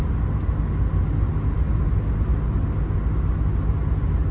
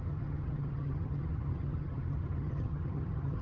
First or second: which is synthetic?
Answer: second